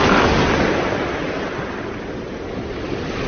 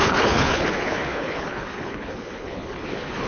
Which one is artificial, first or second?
second